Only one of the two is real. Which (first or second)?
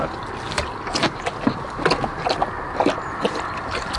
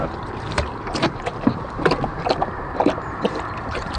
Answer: first